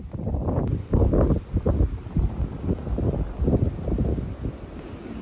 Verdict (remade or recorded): recorded